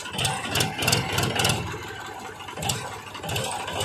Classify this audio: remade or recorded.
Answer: recorded